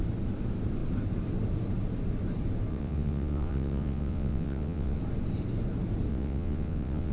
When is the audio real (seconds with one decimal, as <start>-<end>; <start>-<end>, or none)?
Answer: 0.0-2.7; 5.0-6.1